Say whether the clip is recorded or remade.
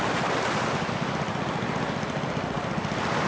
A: recorded